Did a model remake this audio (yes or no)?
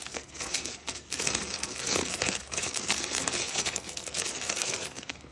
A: yes